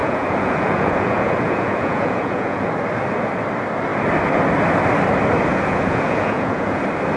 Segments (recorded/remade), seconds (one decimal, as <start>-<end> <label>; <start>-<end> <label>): 0.0-2.7 remade; 2.7-5.5 recorded; 5.5-6.8 remade; 6.8-7.2 recorded

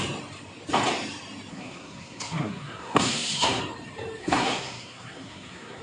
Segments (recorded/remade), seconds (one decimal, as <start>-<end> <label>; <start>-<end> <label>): 0.0-1.5 recorded; 1.5-3.6 remade; 3.6-4.2 recorded; 4.2-5.8 remade

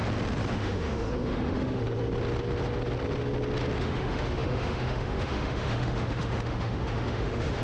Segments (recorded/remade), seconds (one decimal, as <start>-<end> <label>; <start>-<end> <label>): 0.0-0.5 recorded; 0.5-1.8 remade; 1.8-3.8 recorded; 3.8-7.6 remade

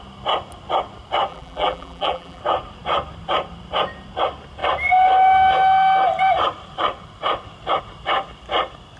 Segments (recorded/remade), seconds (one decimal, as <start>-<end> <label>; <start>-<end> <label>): 0.0-1.3 recorded; 1.3-2.4 remade; 2.4-9.0 recorded

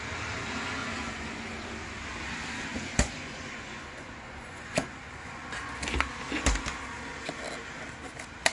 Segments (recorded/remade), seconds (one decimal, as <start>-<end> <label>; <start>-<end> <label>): 0.0-0.8 recorded; 0.8-1.7 remade; 1.7-2.7 recorded; 2.7-5.7 remade; 5.7-8.5 recorded

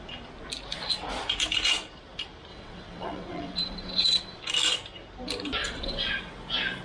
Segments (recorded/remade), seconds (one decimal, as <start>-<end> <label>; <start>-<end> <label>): 0.0-2.5 recorded; 2.5-4.4 remade; 4.4-5.6 recorded; 5.6-6.1 remade; 6.1-6.8 recorded

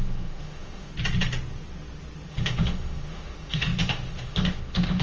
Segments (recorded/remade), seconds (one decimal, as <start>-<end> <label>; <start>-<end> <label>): 0.0-0.9 remade; 0.9-2.3 recorded; 2.3-5.0 remade